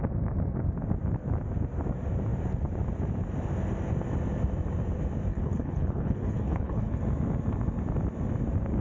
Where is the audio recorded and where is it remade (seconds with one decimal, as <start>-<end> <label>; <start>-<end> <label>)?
0.0-5.3 recorded; 5.3-7.0 remade; 7.0-8.8 recorded